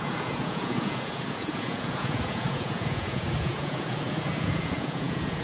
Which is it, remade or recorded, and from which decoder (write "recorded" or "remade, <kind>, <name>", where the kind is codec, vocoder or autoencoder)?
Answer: remade, vocoder, Vocos